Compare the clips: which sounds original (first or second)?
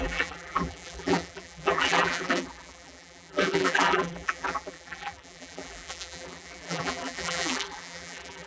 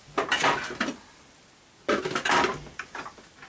second